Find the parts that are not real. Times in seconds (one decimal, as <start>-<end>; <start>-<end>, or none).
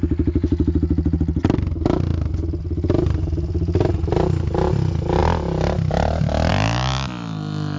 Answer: none